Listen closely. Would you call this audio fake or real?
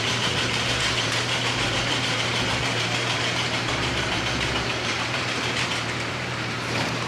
fake